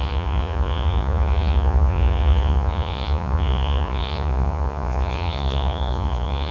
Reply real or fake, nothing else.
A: fake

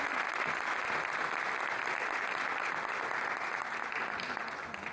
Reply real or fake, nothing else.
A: real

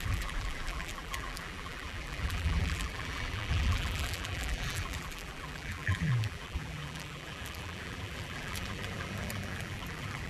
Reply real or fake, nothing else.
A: fake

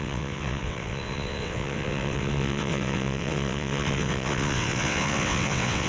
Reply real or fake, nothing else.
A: fake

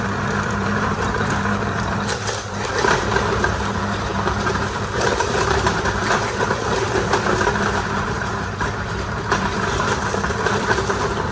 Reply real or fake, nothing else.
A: fake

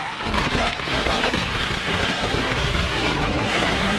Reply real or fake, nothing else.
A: fake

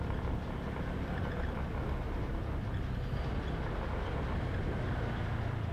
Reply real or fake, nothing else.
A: real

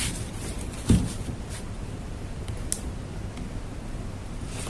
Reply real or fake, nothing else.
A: real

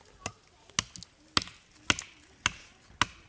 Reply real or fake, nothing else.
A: real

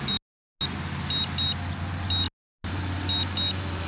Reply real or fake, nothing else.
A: real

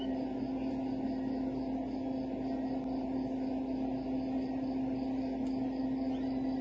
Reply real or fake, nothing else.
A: real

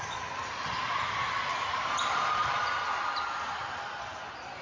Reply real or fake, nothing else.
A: real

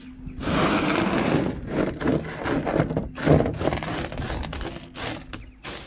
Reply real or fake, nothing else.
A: real